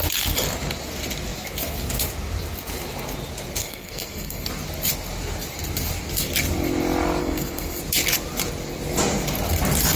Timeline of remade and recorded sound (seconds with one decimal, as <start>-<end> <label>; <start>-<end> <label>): 0.0-3.6 recorded; 3.6-4.5 remade; 4.5-7.2 recorded; 7.2-7.8 remade; 7.8-10.0 recorded